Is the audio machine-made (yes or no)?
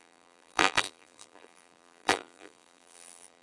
yes